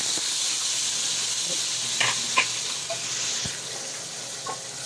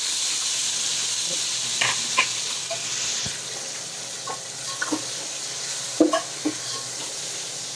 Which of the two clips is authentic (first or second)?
first